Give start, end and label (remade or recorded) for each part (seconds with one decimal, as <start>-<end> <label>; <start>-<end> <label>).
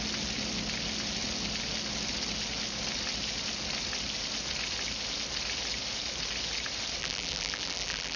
0.0-7.0 recorded; 7.0-8.2 remade